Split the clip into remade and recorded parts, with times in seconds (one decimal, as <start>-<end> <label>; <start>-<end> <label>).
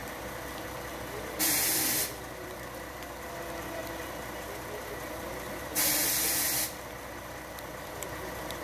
0.0-8.6 recorded